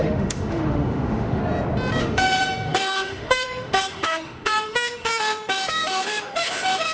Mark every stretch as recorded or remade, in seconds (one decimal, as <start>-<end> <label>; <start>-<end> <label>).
0.0-1.4 remade; 1.4-2.0 recorded; 2.0-6.9 remade